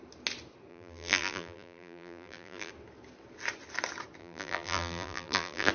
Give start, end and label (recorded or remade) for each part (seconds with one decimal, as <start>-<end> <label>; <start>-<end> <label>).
0.0-0.7 recorded; 0.7-2.7 remade; 2.7-4.2 recorded; 4.2-5.7 remade

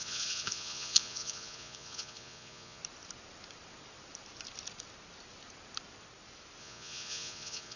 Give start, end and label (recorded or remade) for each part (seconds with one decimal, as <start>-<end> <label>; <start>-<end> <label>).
0.0-2.8 remade; 2.8-6.6 recorded; 6.6-7.8 remade

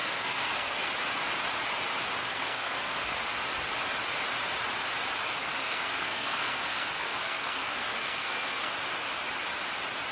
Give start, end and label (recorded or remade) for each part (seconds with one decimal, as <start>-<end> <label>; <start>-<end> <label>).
0.0-0.9 remade; 0.9-2.2 recorded; 2.2-3.2 remade; 3.2-5.4 recorded; 5.4-8.7 remade; 8.7-10.1 recorded